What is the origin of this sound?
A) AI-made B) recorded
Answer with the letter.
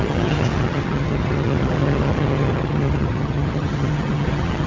A